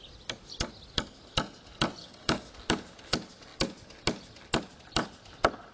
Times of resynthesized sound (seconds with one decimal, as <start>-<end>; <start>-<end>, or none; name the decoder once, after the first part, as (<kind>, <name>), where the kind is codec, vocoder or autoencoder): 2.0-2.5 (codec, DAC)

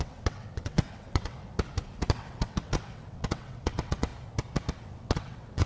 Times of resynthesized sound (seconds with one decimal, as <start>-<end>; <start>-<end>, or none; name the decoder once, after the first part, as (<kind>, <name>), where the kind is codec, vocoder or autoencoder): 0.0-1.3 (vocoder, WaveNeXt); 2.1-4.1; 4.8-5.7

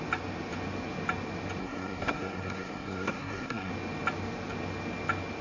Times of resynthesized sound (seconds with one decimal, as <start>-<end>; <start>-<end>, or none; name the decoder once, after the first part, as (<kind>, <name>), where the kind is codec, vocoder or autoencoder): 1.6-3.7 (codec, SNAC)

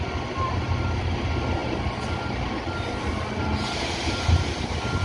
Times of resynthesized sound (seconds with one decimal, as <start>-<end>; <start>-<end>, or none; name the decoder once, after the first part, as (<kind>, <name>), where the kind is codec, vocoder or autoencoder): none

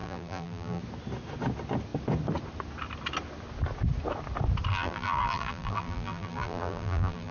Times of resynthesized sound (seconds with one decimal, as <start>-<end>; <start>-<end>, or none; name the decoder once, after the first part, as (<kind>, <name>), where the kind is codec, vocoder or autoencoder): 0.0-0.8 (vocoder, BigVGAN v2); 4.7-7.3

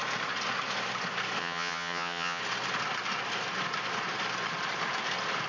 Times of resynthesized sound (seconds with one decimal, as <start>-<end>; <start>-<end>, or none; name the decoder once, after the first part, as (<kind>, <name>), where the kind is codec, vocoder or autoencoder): 1.4-2.4 (vocoder, HiFi-GAN)